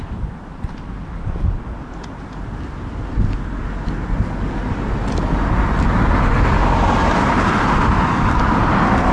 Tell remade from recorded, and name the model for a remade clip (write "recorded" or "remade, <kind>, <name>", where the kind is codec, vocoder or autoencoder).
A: recorded